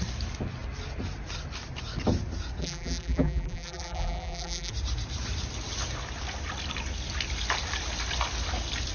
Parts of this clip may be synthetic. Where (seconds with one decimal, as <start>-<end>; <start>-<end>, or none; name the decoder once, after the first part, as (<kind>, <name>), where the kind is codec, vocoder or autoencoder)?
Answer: 2.6-4.7 (vocoder, BigVGAN v2)